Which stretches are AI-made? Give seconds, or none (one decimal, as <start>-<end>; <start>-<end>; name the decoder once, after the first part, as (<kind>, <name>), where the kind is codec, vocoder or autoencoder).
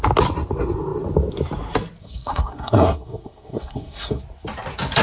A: 2.0-4.2 (codec, SNAC)